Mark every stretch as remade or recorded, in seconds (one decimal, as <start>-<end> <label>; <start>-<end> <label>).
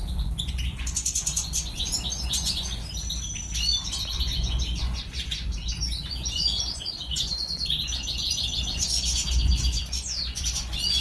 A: 0.0-2.8 remade; 2.8-4.1 recorded; 4.1-11.0 remade